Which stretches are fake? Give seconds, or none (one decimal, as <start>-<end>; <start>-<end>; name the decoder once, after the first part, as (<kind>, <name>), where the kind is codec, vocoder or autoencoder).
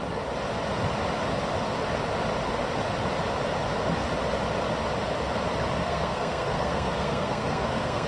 5.8-8.1 (codec, SNAC)